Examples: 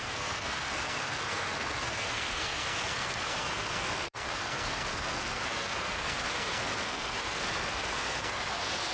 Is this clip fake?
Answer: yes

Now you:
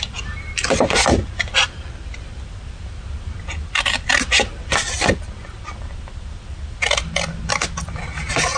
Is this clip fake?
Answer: yes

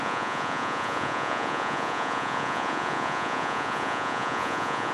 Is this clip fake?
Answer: yes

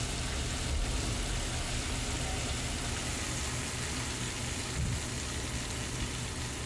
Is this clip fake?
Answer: no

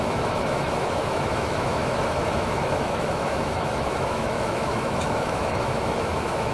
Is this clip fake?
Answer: yes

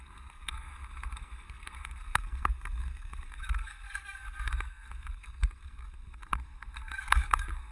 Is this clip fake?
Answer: yes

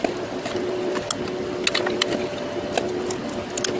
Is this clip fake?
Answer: no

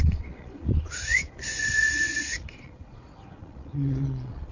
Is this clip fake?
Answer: yes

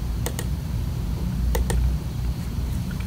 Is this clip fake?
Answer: yes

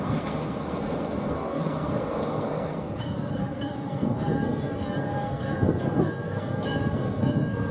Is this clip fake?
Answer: yes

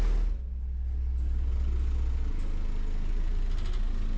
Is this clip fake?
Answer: no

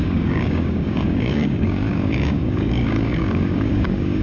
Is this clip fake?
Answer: yes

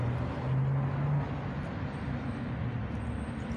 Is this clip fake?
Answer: no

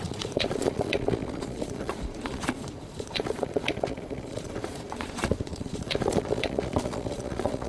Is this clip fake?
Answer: yes